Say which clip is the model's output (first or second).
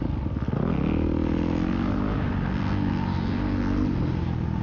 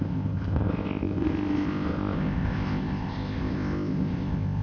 second